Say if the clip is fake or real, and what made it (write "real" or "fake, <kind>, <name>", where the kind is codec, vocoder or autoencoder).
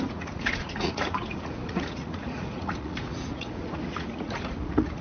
fake, vocoder, Vocos